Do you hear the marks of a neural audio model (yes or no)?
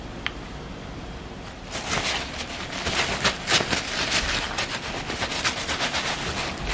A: no